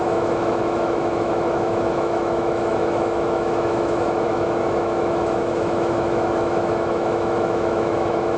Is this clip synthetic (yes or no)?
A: yes